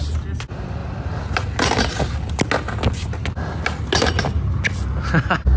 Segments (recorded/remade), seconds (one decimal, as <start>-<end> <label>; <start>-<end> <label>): 0.0-5.6 recorded